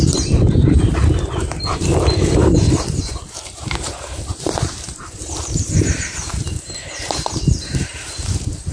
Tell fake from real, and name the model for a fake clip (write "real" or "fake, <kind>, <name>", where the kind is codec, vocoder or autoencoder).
fake, vocoder, BigVGAN v2